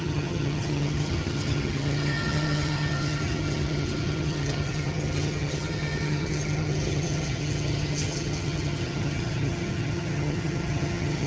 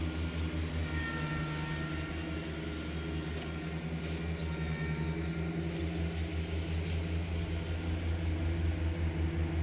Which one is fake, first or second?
first